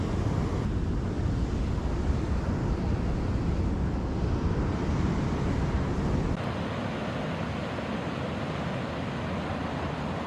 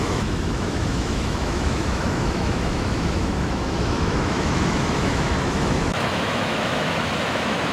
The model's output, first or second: second